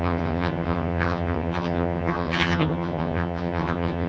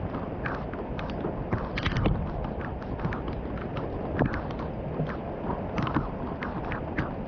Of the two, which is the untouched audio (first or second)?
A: second